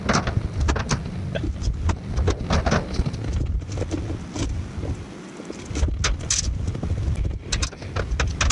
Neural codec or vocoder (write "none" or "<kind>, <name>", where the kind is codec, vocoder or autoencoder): none